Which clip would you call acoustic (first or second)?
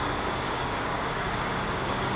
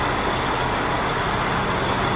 second